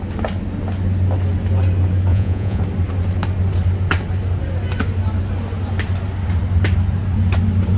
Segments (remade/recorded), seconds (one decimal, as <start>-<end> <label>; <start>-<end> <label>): 0.0-2.1 recorded; 2.1-2.6 remade; 2.6-7.8 recorded